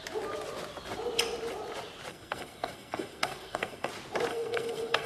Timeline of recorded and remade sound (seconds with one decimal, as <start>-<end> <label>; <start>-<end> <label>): 0.0-2.1 recorded; 2.1-3.9 remade; 3.9-4.3 recorded; 4.3-5.1 remade

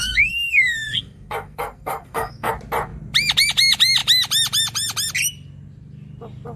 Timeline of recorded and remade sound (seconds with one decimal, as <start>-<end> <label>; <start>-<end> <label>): 0.0-2.5 remade; 2.5-6.6 recorded

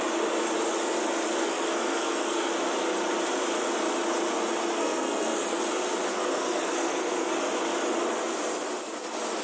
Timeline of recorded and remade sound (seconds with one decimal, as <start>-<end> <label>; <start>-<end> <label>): 0.0-1.4 recorded; 1.4-2.5 remade; 2.5-4.8 recorded; 4.8-5.6 remade; 5.6-6.1 recorded; 6.1-7.3 remade; 7.3-9.4 recorded

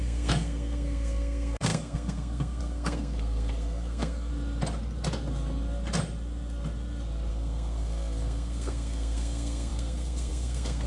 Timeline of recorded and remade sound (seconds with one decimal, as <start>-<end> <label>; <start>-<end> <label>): 0.0-4.3 remade; 4.3-7.3 recorded; 7.3-10.9 remade

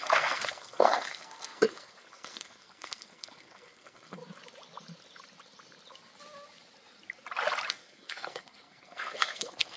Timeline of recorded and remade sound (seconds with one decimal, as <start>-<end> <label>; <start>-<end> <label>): 0.0-4.2 remade; 4.2-7.7 recorded; 7.7-9.8 remade

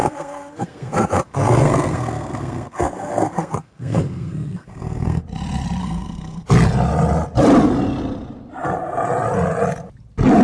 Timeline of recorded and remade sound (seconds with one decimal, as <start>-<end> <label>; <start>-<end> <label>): 0.0-5.2 remade; 5.2-5.8 recorded; 5.8-6.5 remade; 6.5-10.4 recorded

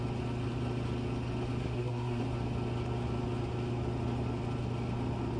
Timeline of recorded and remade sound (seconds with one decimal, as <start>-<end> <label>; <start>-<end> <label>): 0.0-1.6 recorded; 1.6-2.2 remade; 2.2-5.4 recorded

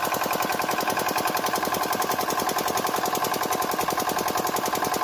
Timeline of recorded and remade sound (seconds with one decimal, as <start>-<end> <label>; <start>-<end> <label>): 0.0-5.0 recorded